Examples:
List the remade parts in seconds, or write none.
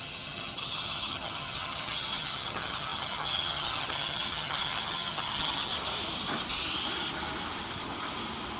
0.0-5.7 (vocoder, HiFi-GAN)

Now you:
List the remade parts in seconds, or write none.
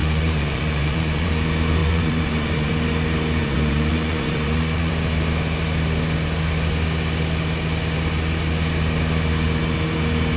0.0-1.3 (vocoder, Vocos); 1.8-2.7; 3.4-4.9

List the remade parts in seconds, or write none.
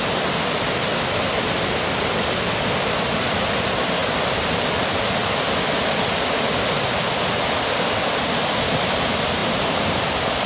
none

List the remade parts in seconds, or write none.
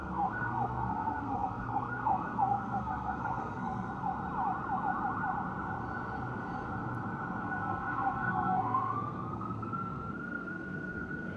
0.0-3.9 (codec, SNAC); 7.4-11.4